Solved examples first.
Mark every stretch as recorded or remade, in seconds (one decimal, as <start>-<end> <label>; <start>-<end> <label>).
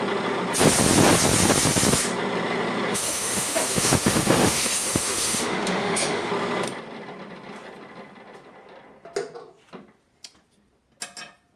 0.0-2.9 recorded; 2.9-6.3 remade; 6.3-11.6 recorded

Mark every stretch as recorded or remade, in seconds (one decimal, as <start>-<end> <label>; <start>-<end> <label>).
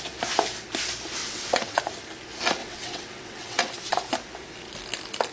0.0-1.2 recorded; 1.2-1.8 remade; 1.8-2.6 recorded; 2.6-3.6 remade; 3.6-5.3 recorded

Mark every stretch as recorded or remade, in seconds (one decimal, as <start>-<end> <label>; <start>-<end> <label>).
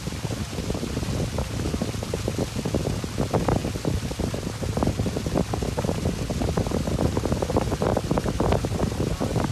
0.0-9.5 recorded